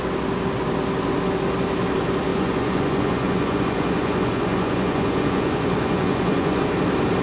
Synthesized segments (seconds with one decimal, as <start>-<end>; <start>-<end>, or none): 2.3-6.6